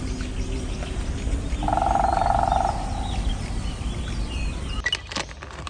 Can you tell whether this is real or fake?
real